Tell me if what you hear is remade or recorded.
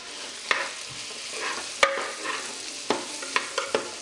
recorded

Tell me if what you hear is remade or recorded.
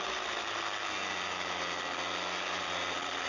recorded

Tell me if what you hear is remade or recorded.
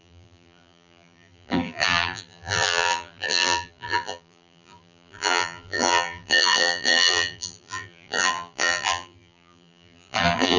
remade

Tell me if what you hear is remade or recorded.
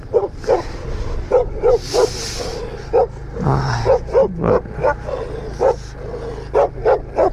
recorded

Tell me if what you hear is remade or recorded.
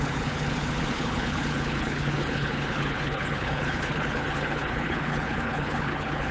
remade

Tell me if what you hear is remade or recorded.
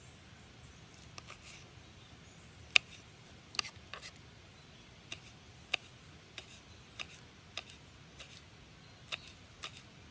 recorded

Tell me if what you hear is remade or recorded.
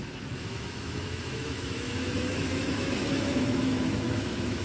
remade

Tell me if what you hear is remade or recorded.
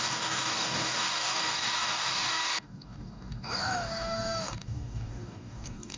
remade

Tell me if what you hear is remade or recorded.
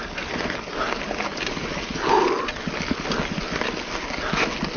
recorded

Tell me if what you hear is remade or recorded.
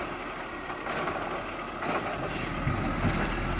recorded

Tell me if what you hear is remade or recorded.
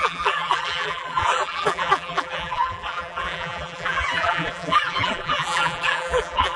remade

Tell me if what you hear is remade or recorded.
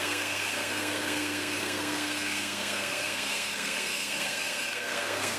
remade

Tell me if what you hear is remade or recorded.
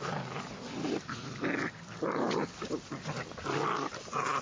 recorded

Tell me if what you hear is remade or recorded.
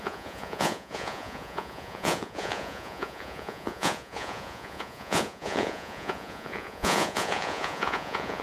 remade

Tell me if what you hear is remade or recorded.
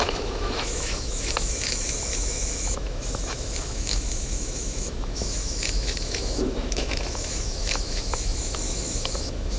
remade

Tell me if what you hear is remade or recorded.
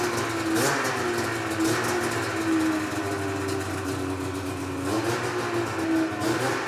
recorded